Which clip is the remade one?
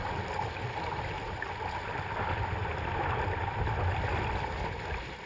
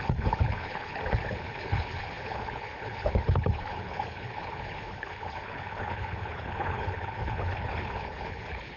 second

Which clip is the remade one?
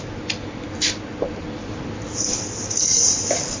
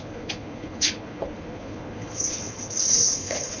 second